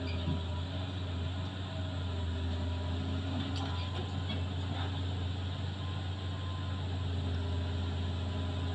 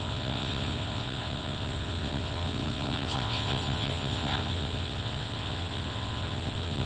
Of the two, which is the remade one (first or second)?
second